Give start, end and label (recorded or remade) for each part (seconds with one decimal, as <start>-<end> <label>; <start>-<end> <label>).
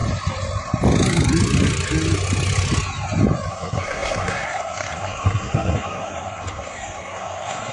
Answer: 0.0-3.5 recorded; 3.5-7.7 remade